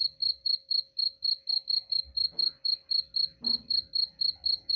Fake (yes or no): no